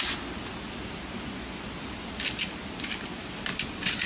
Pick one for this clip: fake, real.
real